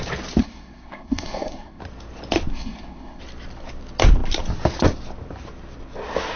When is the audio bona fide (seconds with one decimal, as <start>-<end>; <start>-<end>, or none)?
0.0-0.4; 1.8-2.5; 3.2-6.4